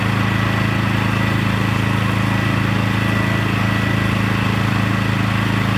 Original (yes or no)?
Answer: yes